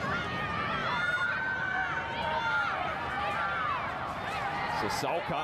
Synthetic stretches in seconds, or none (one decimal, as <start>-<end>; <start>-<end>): none